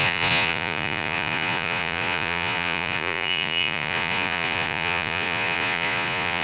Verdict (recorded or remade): remade